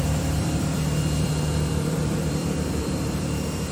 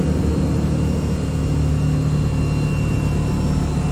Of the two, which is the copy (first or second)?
first